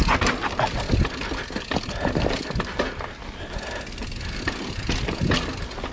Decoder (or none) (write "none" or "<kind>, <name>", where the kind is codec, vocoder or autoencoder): none